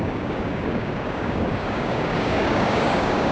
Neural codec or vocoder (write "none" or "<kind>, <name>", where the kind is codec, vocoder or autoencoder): codec, DAC